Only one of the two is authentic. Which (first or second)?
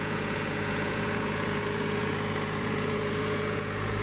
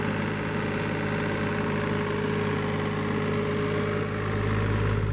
second